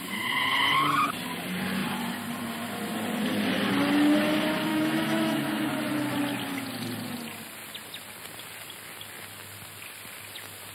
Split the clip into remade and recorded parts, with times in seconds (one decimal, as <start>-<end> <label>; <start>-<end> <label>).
0.0-4.7 recorded; 4.7-5.7 remade; 5.7-10.7 recorded